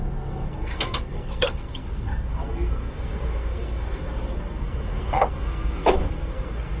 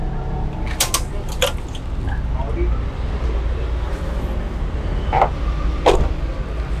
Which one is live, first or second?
second